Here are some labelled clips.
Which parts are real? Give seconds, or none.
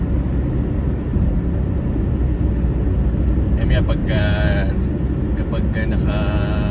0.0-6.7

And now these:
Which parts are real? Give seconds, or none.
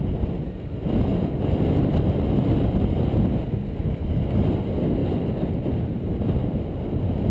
0.0-7.3